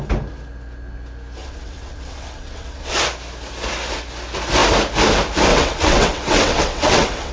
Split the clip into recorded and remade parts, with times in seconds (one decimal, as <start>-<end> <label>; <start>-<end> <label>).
0.0-1.4 recorded; 1.4-3.0 remade; 3.0-5.5 recorded; 5.5-7.3 remade